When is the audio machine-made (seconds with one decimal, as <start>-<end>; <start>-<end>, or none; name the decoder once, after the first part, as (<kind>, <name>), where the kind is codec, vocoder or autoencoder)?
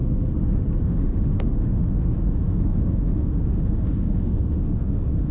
0.8-5.3 (autoencoder, DAC-VAE)